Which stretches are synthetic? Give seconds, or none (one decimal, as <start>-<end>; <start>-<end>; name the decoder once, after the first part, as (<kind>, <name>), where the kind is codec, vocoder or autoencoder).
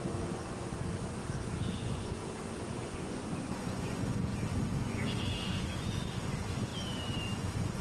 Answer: 0.0-1.2 (vocoder, Vocos); 1.7-2.2; 2.7-4.3; 4.8-7.8